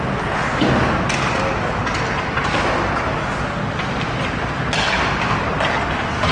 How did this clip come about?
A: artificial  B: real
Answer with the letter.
B